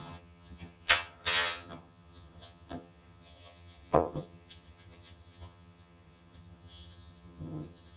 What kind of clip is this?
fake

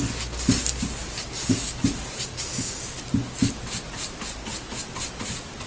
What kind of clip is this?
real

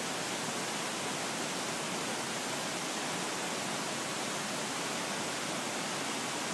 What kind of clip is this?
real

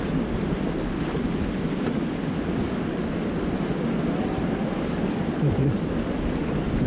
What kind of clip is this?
real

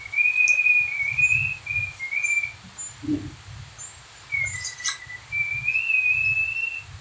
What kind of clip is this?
real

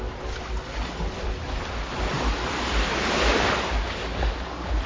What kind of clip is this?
real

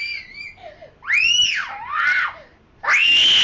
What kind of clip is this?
real